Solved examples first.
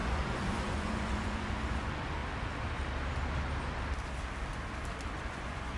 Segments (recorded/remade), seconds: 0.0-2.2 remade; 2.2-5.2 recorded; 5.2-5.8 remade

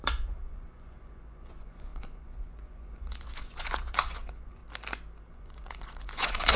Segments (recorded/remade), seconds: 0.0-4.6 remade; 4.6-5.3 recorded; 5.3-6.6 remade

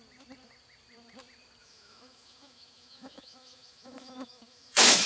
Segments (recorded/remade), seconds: 0.0-1.6 recorded; 1.6-5.1 remade

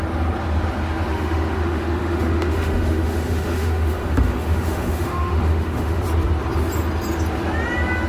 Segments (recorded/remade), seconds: 0.0-1.1 recorded; 1.1-6.0 remade; 6.0-8.1 recorded

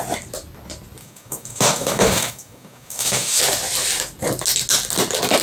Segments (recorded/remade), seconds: 0.0-1.0 recorded; 1.0-3.4 remade; 3.4-5.4 recorded

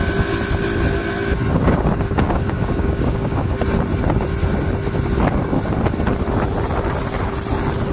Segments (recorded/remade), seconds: 0.0-1.5 recorded; 1.5-3.6 remade; 3.6-7.9 recorded

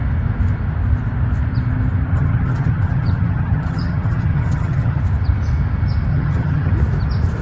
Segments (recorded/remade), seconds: 0.0-2.1 recorded; 2.1-5.0 remade; 5.0-6.1 recorded; 6.1-6.7 remade; 6.7-7.4 recorded